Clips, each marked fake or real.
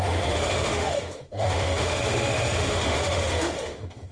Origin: fake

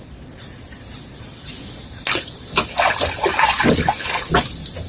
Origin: real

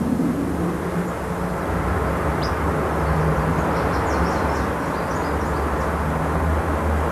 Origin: real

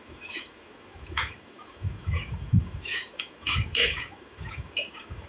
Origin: fake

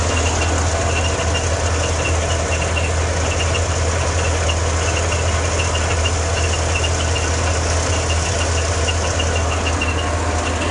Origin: real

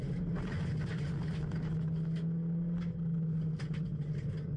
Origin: real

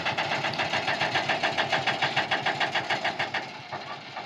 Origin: real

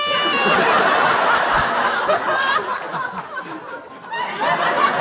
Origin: real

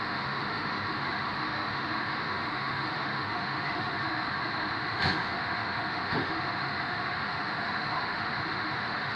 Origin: fake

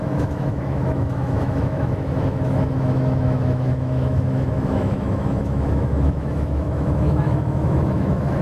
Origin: fake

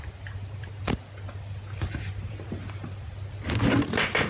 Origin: real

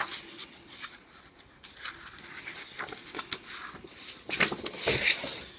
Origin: real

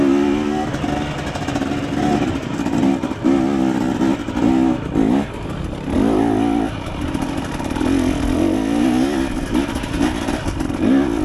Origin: real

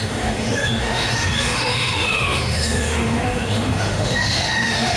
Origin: fake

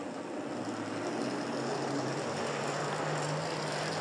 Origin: real